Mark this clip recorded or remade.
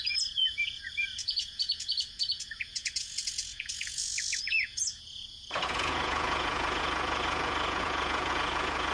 remade